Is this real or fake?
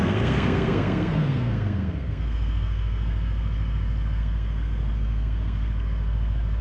fake